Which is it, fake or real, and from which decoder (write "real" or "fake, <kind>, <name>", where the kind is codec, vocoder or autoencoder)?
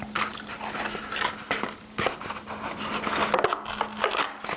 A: real